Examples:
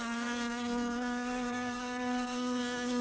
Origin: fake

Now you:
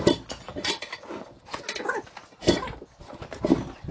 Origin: real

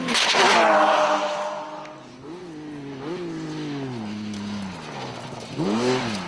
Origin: real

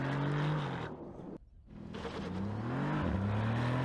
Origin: real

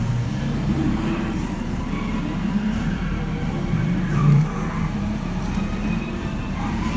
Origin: fake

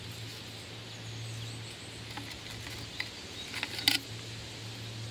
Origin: real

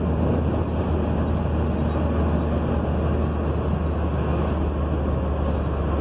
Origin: real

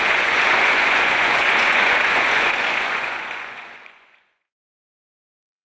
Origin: fake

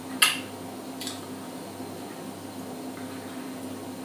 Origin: real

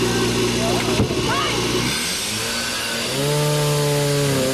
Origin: real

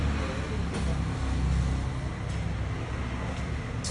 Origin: real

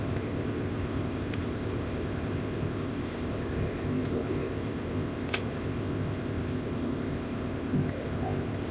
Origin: fake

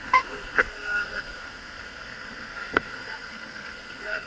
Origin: fake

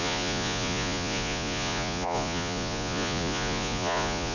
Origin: fake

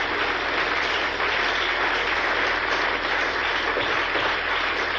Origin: real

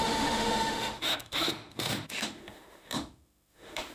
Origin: fake